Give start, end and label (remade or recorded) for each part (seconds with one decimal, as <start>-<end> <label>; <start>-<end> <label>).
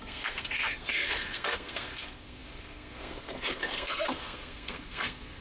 0.0-5.4 remade